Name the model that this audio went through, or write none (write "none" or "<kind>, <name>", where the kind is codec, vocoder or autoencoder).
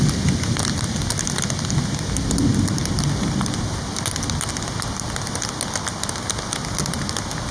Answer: none